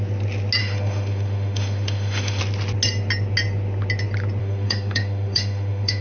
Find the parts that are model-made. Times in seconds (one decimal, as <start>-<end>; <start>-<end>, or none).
0.6-2.4; 4.4-6.0